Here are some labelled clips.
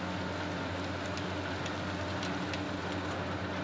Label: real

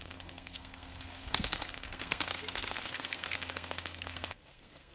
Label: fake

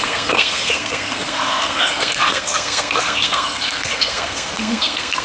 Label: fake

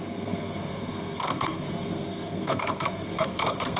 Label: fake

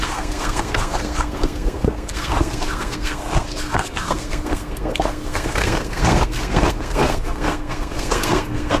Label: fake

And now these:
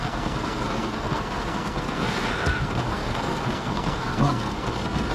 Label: fake